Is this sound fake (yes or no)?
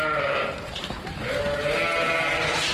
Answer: no